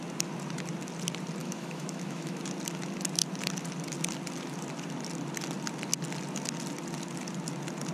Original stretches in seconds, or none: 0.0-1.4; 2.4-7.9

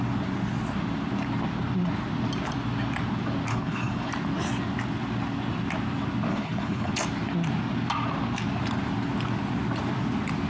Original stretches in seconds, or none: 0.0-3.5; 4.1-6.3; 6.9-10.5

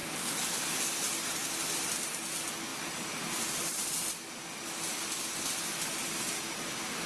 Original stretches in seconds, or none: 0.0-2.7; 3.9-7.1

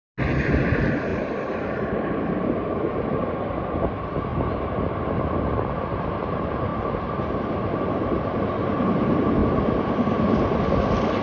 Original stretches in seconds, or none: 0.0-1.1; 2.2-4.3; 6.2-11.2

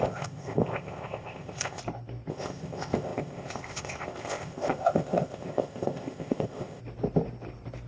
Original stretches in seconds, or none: 1.8-2.3; 6.8-7.9